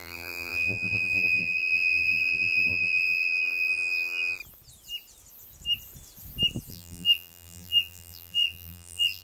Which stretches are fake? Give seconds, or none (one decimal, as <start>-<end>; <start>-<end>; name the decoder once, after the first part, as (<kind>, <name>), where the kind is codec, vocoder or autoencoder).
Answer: 0.0-4.4 (vocoder, BigVGAN v2); 6.7-9.2